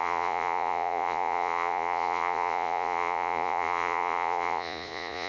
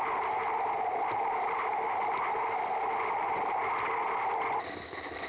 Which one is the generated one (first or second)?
first